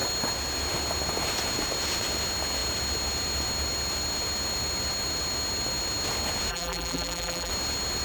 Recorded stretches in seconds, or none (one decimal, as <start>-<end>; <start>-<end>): 0.0-6.5; 7.5-8.0